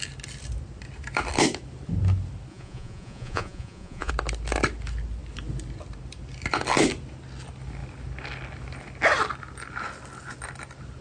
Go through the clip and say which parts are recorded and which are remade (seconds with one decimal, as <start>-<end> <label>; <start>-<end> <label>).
0.0-2.5 recorded; 2.5-4.1 remade; 4.1-11.0 recorded